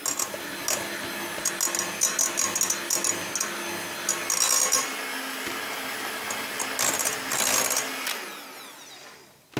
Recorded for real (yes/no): yes